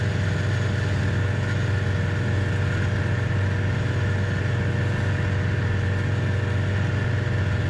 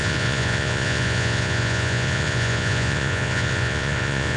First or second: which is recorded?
first